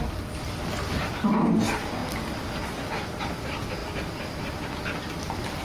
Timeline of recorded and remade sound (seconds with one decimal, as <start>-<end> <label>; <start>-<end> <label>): 0.0-5.6 recorded